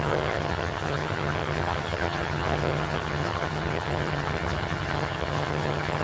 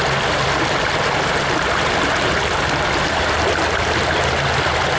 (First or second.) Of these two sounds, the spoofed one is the first